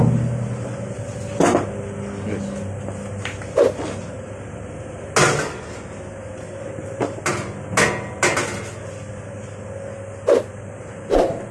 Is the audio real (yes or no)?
yes